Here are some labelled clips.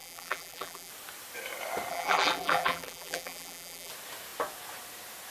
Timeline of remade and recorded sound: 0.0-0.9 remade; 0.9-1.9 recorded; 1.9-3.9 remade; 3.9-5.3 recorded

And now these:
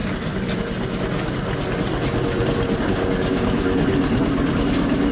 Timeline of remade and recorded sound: 0.0-2.8 recorded; 2.8-3.9 remade; 3.9-4.5 recorded; 4.5-5.1 remade

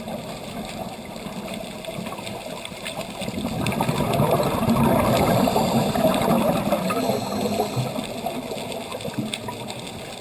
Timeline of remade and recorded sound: 0.0-10.2 recorded

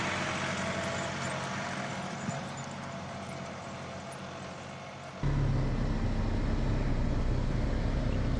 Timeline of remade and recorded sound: 0.0-6.9 recorded; 6.9-7.5 remade; 7.5-8.4 recorded

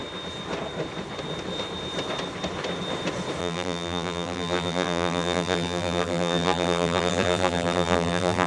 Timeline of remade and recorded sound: 0.0-3.4 recorded; 3.4-8.5 remade